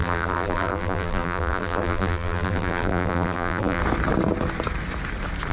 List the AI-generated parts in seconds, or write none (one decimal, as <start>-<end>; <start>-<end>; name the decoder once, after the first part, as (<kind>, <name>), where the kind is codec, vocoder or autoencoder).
0.0-3.8 (vocoder, BigVGAN v2)